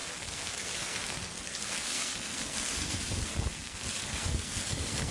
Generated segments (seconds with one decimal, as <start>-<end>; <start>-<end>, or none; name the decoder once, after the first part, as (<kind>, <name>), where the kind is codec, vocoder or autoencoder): 0.0-5.1 (codec, SNAC)